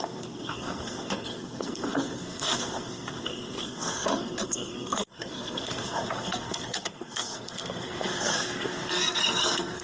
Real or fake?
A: fake